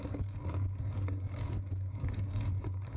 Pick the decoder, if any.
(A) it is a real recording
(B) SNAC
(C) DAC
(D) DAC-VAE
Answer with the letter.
C